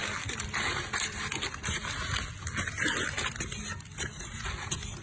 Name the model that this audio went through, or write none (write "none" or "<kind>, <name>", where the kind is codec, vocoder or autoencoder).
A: none